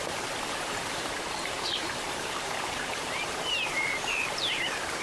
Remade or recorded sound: remade